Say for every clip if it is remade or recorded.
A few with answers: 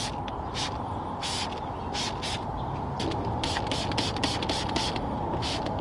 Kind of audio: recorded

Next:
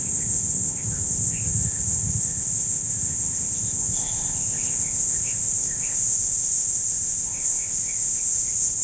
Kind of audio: remade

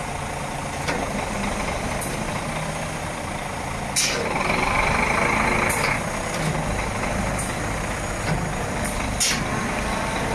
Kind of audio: recorded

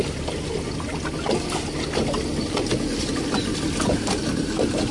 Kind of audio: recorded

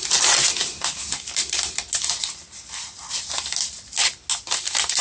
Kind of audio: recorded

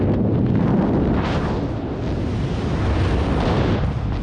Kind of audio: recorded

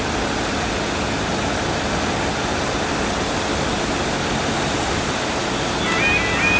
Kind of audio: recorded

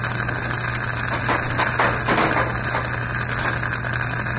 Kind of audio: recorded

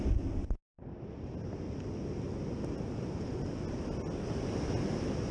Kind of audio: recorded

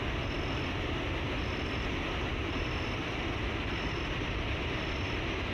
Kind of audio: recorded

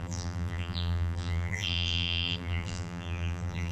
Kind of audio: remade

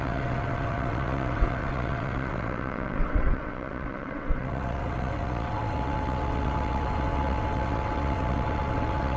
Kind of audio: remade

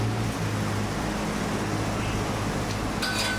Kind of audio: recorded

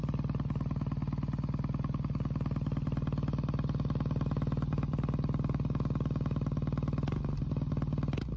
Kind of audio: recorded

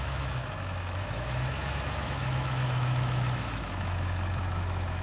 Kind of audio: remade